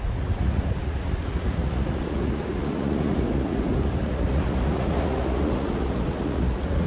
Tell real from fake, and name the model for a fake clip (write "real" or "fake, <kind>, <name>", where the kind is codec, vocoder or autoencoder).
fake, vocoder, Vocos